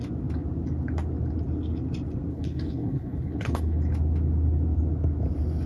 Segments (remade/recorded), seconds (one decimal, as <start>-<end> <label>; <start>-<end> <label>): 0.0-2.3 recorded; 2.3-3.8 remade; 3.8-5.7 recorded